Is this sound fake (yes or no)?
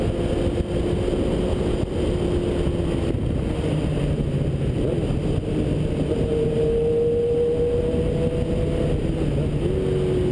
no